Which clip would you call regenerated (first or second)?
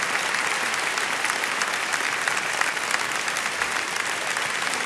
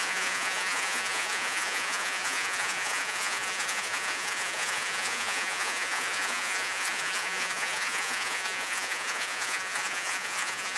second